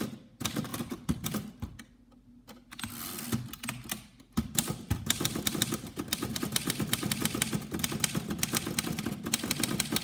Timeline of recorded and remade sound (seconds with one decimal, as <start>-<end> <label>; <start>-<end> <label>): 0.0-10.0 recorded